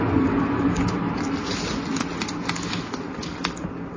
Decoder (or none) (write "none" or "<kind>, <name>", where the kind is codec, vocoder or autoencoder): none